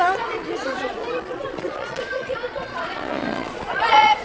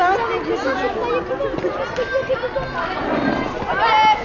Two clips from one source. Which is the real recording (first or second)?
second